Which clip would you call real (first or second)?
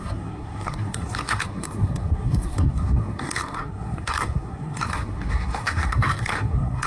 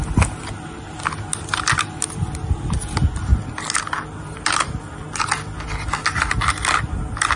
second